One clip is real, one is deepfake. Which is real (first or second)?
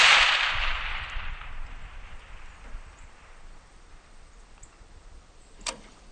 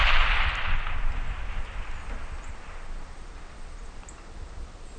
second